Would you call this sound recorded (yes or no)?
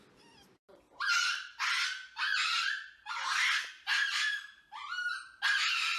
yes